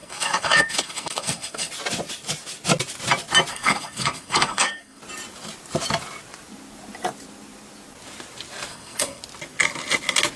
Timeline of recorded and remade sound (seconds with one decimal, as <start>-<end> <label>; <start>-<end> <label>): 0.0-1.7 remade; 1.7-3.5 recorded; 3.5-5.0 remade; 5.0-8.7 recorded; 8.7-9.2 remade; 9.2-10.4 recorded